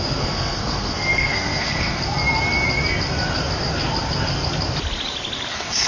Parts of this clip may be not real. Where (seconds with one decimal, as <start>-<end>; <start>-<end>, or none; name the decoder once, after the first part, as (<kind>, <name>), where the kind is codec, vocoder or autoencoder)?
0.0-2.0 (codec, SNAC); 5.5-5.9